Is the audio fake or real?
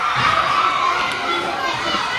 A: real